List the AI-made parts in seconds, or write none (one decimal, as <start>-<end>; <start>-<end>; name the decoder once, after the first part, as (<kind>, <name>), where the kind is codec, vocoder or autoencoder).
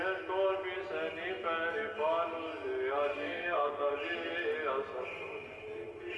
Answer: 3.1-3.9 (codec, SNAC)